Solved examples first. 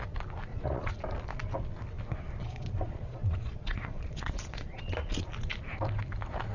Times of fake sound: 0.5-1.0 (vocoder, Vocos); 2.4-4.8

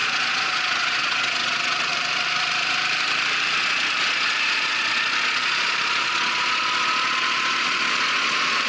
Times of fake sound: 0.0-1.9 (vocoder, Vocos); 3.6-8.7

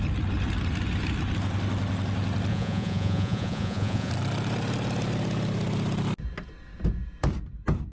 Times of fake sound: 2.5-4.1 (vocoder, Vocos)

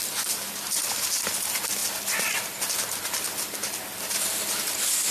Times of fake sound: none

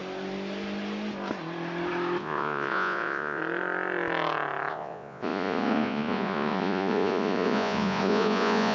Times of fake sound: 2.2-3.4 (vocoder, Vocos); 4.7-8.7

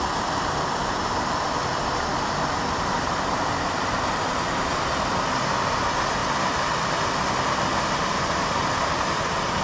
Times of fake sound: none

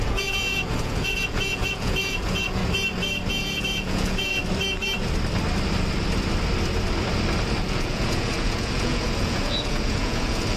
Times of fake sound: 0.0-2.6 (vocoder, Vocos); 3.3-4.4; 7.6-10.6

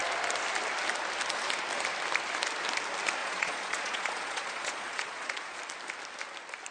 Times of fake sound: 3.2-5.6 (vocoder, Vocos)